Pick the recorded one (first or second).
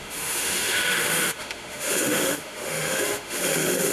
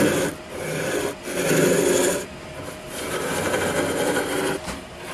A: second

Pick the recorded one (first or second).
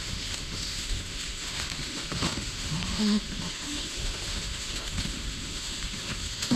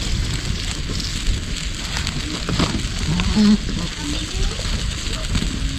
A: second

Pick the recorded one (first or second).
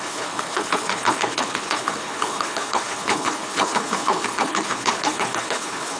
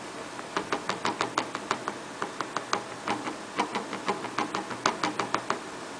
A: second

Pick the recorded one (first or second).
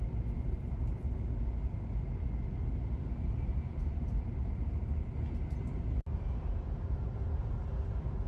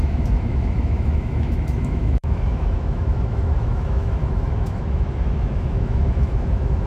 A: first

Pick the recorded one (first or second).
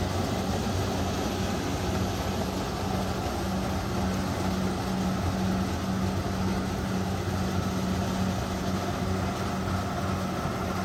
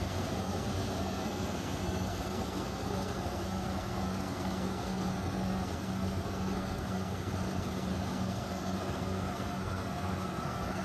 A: first